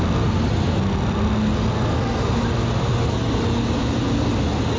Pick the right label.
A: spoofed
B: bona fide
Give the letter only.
B